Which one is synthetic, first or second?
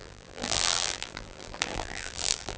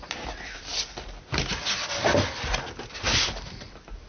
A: first